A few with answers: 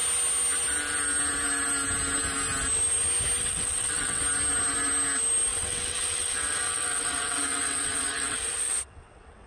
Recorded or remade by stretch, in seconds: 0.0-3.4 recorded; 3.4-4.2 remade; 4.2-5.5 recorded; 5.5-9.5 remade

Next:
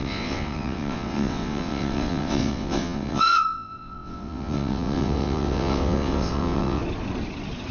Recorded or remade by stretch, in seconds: 0.0-6.8 remade; 6.8-7.7 recorded

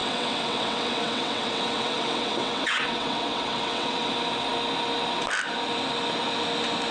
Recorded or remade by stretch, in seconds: 0.0-4.1 remade; 4.1-6.9 recorded

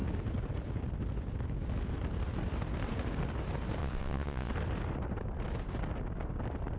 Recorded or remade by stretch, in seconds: 0.0-3.8 recorded; 3.8-4.5 remade; 4.5-6.8 recorded

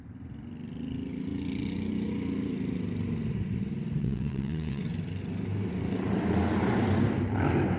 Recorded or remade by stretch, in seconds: 0.0-4.0 recorded; 4.0-4.8 remade; 4.8-7.8 recorded